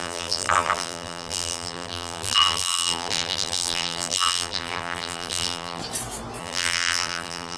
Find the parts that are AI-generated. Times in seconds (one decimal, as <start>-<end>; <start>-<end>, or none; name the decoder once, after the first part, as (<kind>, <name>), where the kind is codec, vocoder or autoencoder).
0.0-5.8 (vocoder, BigVGAN v2); 6.4-7.6

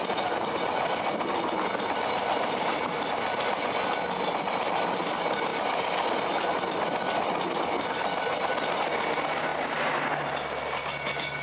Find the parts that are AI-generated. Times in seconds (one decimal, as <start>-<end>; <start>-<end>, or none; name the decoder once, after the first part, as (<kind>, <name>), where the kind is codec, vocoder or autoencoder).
none

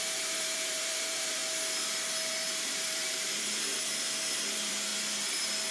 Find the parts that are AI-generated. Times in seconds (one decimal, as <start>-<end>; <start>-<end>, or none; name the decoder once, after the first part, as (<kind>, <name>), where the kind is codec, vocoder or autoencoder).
0.0-1.4 (vocoder, BigVGAN v2); 2.5-3.9; 4.4-4.9

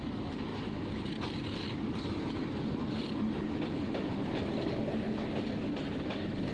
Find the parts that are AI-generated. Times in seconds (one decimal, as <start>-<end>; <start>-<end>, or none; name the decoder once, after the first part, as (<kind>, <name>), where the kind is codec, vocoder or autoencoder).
none

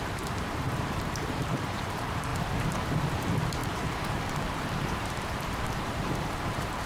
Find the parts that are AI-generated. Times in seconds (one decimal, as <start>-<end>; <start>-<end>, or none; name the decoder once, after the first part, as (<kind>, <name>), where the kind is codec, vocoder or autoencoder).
0.0-6.9 (vocoder, BigVGAN v2)

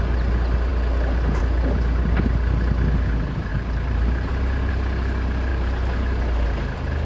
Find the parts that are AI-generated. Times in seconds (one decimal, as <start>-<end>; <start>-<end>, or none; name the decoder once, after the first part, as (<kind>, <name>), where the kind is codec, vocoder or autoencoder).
3.5-4.7 (vocoder, BigVGAN v2); 5.5-6.2